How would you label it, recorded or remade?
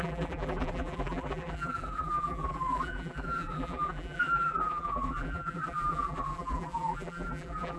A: remade